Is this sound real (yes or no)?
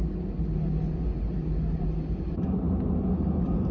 yes